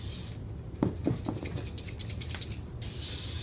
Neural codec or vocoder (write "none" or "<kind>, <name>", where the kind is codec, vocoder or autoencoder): none